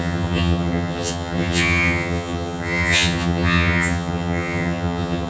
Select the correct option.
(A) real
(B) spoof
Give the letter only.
B